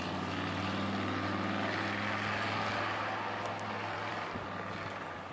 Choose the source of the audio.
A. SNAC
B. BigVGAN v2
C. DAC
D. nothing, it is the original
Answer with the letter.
B